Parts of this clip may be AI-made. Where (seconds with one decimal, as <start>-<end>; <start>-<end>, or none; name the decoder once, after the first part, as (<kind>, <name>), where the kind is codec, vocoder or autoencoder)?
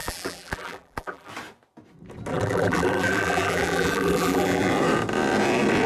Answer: 0.0-1.3 (vocoder, BigVGAN v2); 2.3-4.7